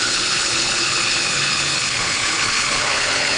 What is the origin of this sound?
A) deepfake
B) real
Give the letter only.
A